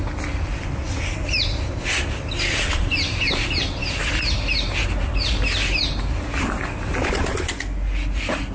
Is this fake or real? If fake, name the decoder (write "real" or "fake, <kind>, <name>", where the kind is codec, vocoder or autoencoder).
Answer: real